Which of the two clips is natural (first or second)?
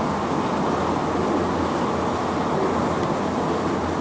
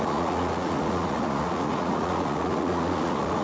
first